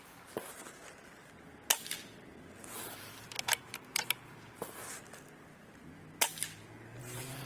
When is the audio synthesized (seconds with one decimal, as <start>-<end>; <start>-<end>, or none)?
0.0-0.8; 2.8-4.8; 7.0-7.5